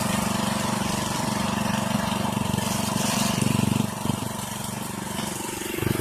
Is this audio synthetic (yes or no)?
yes